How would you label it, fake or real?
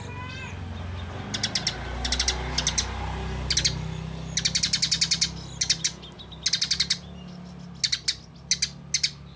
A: real